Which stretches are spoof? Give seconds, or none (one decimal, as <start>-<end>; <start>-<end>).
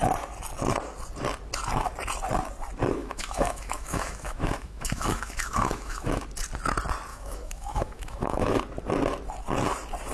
3.0-6.2; 7.1-8.6